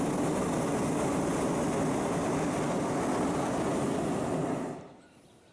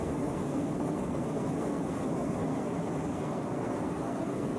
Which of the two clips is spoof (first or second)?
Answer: second